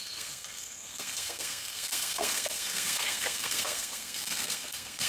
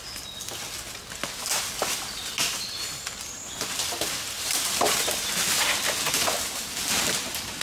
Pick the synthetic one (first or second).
first